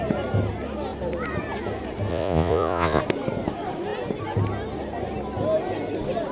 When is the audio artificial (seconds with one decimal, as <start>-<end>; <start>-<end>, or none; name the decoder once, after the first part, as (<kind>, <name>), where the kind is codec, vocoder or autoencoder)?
2.1-3.0 (vocoder, Vocos)

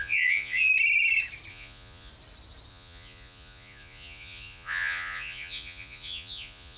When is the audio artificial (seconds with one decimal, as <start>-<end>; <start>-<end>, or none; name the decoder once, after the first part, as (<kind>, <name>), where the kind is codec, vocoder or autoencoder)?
0.0-0.7 (vocoder, Vocos); 1.5-2.1; 2.7-6.8

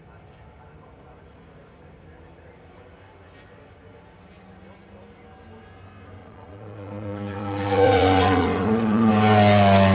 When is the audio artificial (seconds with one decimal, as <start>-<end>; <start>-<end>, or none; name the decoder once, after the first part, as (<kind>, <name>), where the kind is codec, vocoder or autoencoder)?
6.2-9.1 (vocoder, Vocos)

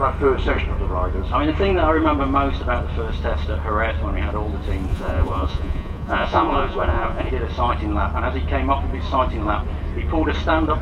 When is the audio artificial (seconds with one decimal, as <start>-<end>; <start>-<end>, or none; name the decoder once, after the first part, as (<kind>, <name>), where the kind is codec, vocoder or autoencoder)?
4.9-7.3 (vocoder, Vocos)

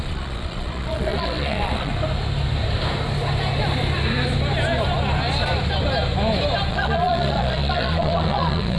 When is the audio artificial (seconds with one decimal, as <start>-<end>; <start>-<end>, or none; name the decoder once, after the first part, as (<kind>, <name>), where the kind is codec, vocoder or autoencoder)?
0.0-1.9 (vocoder, Vocos); 6.7-8.8

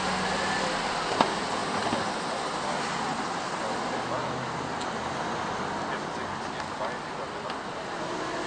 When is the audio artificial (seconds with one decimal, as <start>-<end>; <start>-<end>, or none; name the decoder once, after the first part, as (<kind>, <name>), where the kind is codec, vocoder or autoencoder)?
none

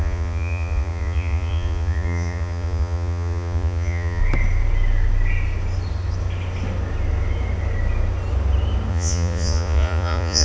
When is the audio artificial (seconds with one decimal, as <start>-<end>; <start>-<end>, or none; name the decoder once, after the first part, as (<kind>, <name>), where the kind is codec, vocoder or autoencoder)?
0.0-4.2 (vocoder, Vocos); 8.9-10.4

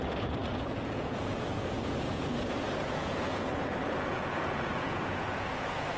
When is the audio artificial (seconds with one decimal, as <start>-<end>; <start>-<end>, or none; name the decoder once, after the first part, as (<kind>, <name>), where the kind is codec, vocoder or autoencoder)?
0.0-6.0 (vocoder, Vocos)